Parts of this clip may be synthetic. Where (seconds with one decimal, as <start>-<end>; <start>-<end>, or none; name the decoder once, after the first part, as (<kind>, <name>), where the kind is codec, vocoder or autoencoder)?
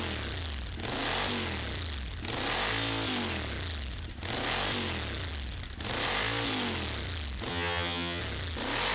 7.5-8.2 (vocoder, HiFi-GAN)